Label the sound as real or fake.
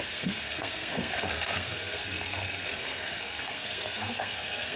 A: fake